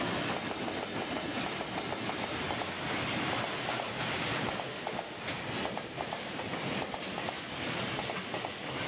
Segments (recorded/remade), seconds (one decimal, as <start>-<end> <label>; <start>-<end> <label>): 0.0-4.7 recorded; 4.7-5.2 remade; 5.2-8.9 recorded